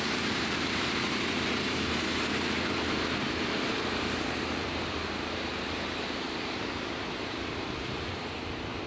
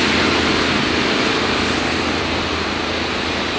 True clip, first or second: second